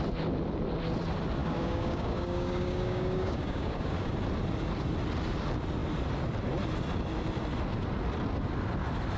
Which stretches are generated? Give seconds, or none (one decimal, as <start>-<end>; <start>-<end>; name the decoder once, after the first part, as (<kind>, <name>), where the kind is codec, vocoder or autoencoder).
1.4-4.1 (codec, DAC)